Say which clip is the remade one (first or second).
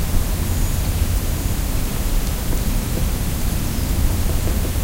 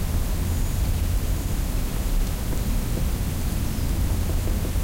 first